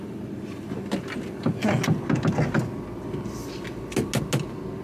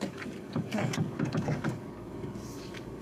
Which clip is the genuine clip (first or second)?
first